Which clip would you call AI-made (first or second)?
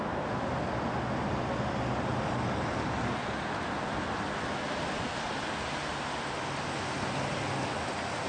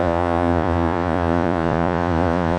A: second